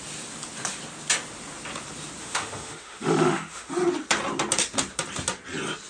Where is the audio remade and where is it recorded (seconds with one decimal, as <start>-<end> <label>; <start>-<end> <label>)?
0.0-2.2 recorded; 2.2-3.7 remade; 3.7-5.9 recorded